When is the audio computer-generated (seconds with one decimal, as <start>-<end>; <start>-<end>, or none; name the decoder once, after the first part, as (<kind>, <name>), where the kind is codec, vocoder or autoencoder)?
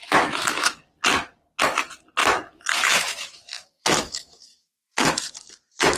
0.0-0.8 (autoencoder, DAC-VAE); 2.2-6.0